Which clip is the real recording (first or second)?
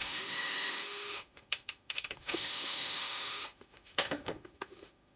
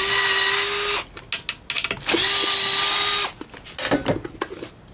second